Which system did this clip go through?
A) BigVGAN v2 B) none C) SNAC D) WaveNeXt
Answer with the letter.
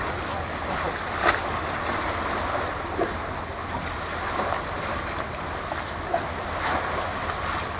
B